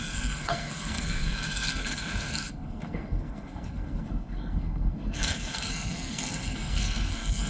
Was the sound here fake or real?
fake